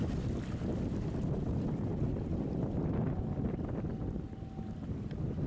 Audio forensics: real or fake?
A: real